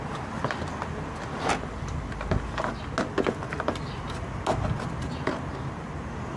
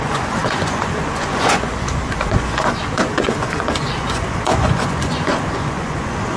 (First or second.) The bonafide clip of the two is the first